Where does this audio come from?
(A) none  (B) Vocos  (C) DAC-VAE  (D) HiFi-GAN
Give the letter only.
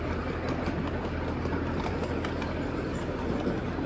A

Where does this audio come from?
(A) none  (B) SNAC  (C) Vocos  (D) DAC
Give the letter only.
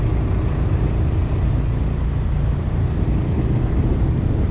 A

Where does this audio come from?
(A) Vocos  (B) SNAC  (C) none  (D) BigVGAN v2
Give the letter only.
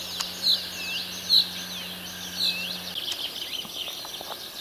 C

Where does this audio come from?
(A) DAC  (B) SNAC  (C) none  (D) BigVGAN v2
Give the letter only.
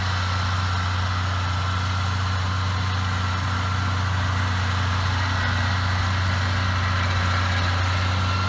C